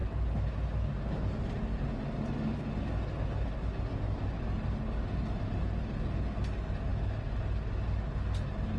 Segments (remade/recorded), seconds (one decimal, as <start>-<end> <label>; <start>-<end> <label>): 0.0-8.8 recorded